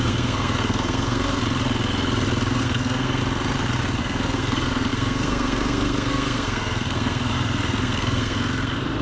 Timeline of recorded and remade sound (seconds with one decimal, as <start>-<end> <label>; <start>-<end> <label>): 0.0-1.4 remade; 1.4-2.5 recorded; 2.5-3.2 remade; 3.2-4.0 recorded; 4.0-9.0 remade